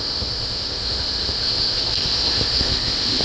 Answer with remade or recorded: remade